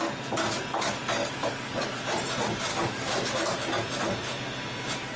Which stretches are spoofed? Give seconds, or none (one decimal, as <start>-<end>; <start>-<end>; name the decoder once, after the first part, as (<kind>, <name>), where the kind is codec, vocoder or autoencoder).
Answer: 1.2-2.0 (codec, DAC); 2.7-3.3